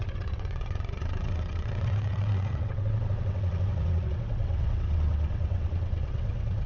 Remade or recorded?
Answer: remade